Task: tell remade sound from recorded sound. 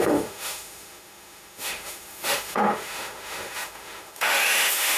remade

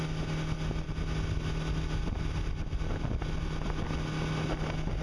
recorded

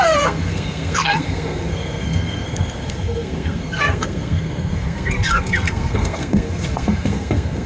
remade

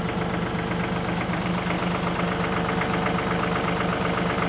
recorded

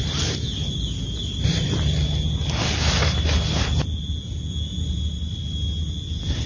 recorded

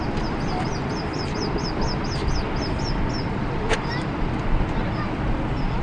recorded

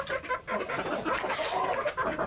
recorded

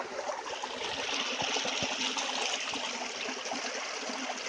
recorded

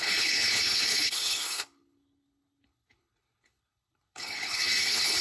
remade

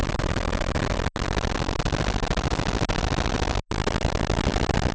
recorded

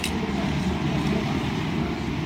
recorded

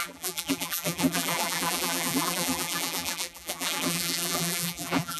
remade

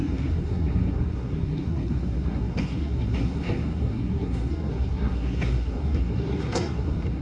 remade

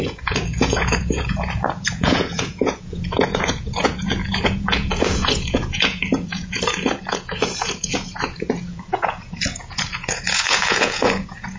remade